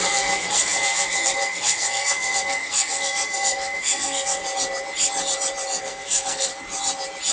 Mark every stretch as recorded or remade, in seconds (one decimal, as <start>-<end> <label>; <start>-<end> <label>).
0.0-4.4 remade; 4.4-5.8 recorded; 5.8-6.5 remade; 6.5-7.3 recorded